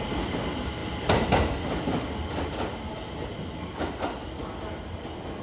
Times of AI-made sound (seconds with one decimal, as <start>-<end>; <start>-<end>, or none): none